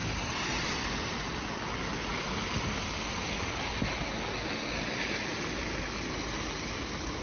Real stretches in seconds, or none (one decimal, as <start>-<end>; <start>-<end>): 0.0-2.1; 3.7-7.2